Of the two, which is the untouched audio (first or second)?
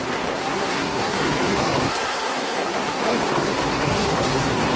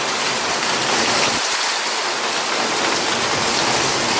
second